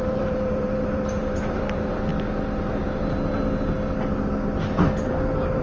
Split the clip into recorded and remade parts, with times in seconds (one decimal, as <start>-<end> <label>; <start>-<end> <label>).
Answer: 0.0-2.1 remade; 2.1-5.6 recorded